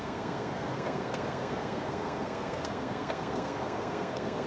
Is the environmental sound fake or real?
fake